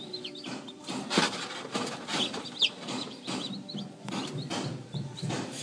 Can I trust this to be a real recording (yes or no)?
no